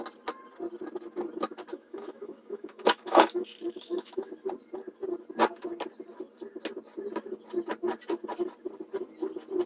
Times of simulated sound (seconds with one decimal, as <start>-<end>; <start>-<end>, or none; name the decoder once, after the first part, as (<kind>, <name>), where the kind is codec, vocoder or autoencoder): 1.7-4.3 (autoencoder, DAC-VAE)